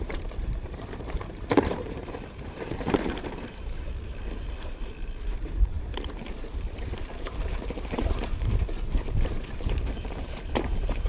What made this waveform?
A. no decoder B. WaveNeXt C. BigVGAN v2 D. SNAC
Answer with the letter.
C